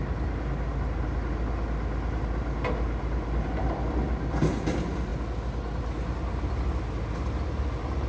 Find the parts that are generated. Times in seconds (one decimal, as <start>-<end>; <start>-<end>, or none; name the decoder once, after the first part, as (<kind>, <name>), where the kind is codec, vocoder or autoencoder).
none